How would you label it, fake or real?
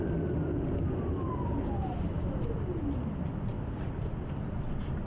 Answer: real